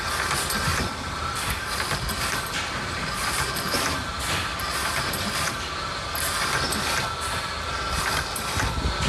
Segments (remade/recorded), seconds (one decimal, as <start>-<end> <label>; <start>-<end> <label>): 0.0-0.7 recorded; 0.7-3.5 remade; 3.5-4.8 recorded; 4.8-5.5 remade; 5.5-9.1 recorded